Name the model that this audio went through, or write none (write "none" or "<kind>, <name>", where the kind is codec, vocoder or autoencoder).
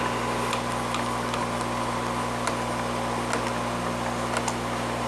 none